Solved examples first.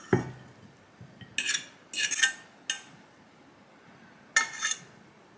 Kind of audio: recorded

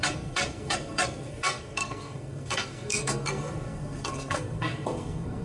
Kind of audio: remade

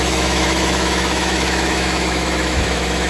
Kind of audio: remade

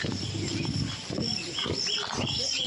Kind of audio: recorded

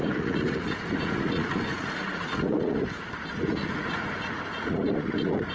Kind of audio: remade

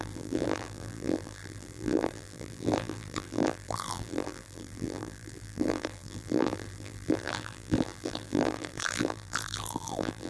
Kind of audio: remade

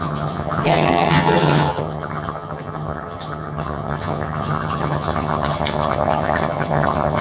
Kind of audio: remade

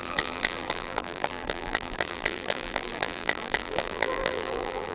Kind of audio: remade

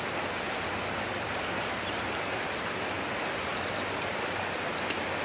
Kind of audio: recorded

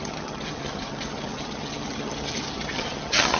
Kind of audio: remade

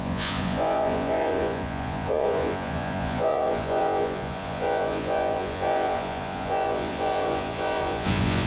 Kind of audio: remade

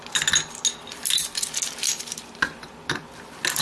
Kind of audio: recorded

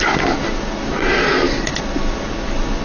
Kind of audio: recorded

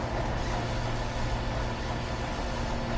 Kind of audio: recorded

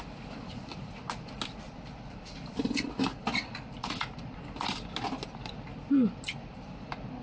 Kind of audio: recorded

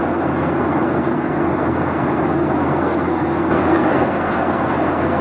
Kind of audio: remade